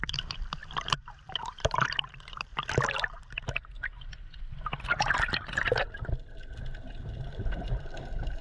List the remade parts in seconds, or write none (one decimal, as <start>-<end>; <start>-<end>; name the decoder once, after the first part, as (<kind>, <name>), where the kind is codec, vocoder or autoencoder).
0.0-2.5 (vocoder, BigVGAN v2); 7.0-8.4